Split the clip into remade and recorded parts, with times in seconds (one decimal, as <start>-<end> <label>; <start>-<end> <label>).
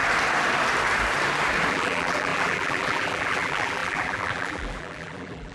0.0-1.7 recorded; 1.7-5.5 remade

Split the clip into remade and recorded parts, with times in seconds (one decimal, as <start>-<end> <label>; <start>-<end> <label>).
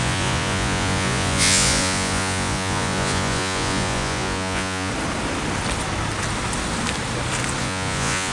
0.0-4.9 remade; 4.9-7.6 recorded; 7.6-8.3 remade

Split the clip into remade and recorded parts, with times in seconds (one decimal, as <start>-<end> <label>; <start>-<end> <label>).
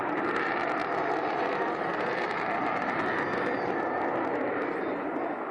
0.0-5.5 recorded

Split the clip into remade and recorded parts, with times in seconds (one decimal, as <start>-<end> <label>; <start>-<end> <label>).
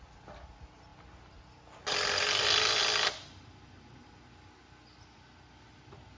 0.0-6.2 recorded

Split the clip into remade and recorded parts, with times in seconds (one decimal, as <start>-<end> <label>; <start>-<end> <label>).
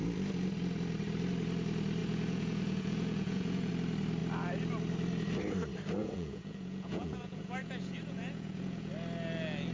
0.0-2.0 recorded; 2.0-3.7 remade; 3.7-6.0 recorded; 6.0-8.9 remade; 8.9-9.7 recorded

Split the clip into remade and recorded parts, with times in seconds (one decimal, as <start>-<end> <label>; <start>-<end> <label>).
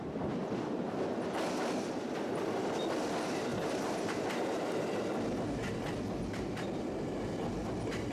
0.0-3.5 recorded; 3.5-4.1 remade; 4.1-8.1 recorded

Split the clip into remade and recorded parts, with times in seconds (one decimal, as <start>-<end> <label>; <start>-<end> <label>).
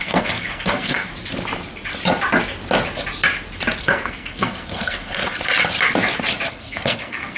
0.0-1.1 remade; 1.1-3.8 recorded; 3.8-5.2 remade; 5.2-6.5 recorded; 6.5-7.4 remade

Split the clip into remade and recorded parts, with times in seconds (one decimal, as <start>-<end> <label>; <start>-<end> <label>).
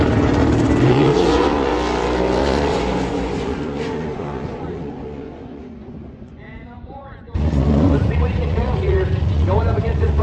0.0-0.4 remade; 0.4-0.9 recorded; 0.9-1.7 remade; 1.7-2.4 recorded; 2.4-10.2 remade